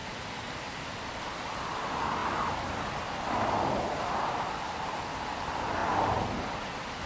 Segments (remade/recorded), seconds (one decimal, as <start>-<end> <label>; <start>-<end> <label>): 0.0-2.2 remade; 2.2-4.3 recorded; 4.3-5.8 remade; 5.8-7.1 recorded